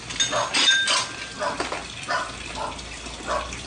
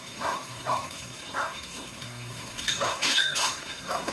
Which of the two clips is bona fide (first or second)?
first